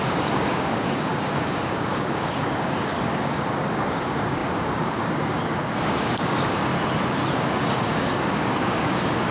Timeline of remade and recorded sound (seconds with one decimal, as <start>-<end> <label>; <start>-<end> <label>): 0.0-6.7 remade; 6.7-7.3 recorded; 7.3-9.3 remade